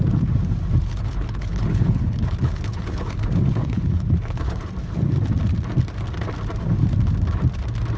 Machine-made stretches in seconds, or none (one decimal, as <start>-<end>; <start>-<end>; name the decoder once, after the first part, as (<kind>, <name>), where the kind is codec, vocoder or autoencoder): 0.8-4.7 (codec, HILCodec)